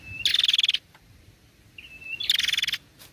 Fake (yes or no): no